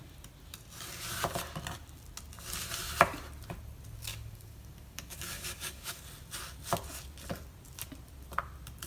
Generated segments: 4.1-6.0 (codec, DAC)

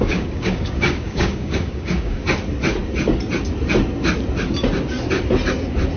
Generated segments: 0.0-2.2 (codec, DAC)